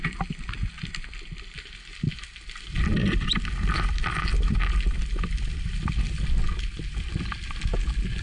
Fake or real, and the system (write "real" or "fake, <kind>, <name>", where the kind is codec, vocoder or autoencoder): real